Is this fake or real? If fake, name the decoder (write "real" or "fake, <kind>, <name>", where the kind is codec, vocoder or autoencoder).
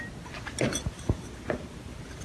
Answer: real